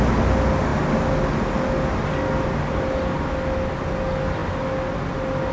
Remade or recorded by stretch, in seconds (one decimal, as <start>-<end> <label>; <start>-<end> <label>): 0.0-5.5 recorded